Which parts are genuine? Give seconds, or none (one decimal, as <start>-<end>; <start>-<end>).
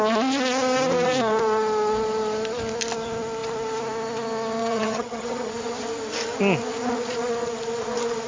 0.0-4.6; 5.5-8.3